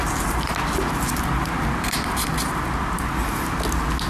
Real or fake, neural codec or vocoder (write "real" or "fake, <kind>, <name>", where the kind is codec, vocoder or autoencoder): real